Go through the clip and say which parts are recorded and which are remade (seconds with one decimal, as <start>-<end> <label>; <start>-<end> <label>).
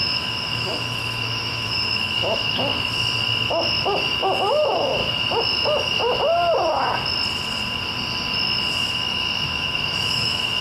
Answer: 0.0-2.7 remade; 2.7-4.5 recorded; 4.5-5.0 remade; 5.0-8.8 recorded; 8.8-10.6 remade